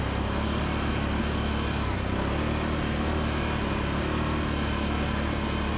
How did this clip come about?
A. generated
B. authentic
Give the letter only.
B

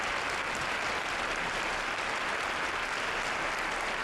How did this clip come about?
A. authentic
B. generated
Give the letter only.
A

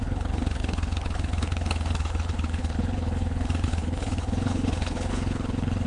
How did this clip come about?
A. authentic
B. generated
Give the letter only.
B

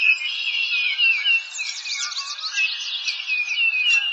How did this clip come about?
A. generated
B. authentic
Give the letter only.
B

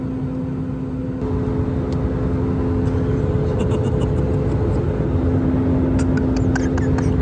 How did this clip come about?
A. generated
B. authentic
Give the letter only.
B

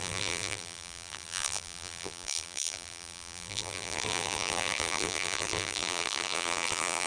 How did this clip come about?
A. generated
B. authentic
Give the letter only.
A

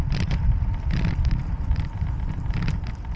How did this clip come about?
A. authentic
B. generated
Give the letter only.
A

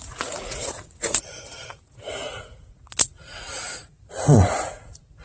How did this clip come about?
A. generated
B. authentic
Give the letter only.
A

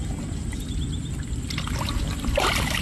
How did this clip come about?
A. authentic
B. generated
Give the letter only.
A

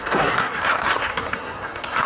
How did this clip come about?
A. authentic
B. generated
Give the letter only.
B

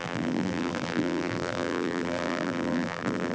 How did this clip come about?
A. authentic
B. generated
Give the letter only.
B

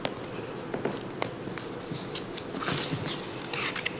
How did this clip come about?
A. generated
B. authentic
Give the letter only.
B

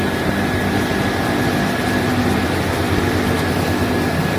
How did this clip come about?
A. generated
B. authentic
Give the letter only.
B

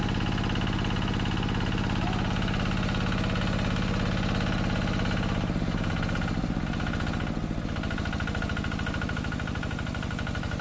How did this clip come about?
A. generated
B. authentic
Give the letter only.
B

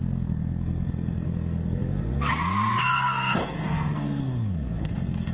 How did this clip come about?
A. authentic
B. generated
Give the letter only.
B